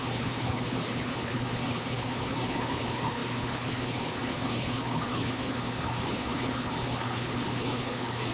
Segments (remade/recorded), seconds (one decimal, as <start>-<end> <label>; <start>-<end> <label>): 0.0-8.3 remade